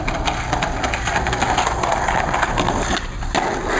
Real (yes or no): yes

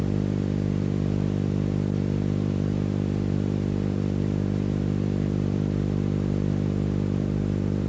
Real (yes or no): no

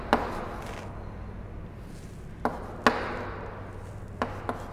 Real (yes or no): yes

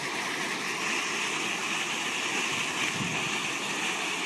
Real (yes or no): yes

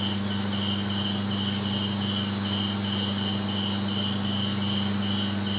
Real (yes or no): yes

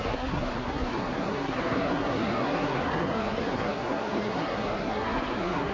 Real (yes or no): no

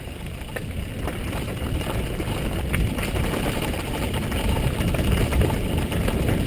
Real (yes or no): yes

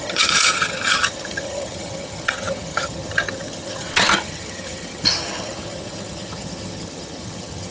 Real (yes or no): no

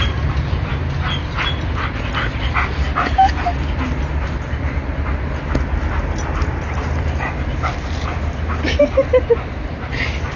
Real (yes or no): yes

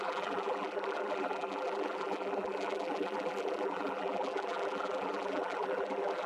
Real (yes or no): no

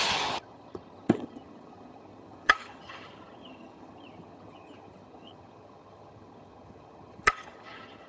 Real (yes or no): no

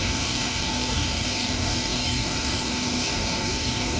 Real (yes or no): no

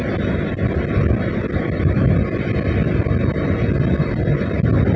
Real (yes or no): yes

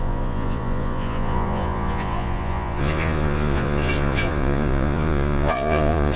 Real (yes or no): no